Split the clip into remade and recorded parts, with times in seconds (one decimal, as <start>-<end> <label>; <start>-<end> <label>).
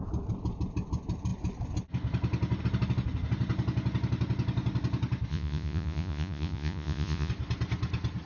0.0-5.3 recorded; 5.3-7.3 remade; 7.3-8.3 recorded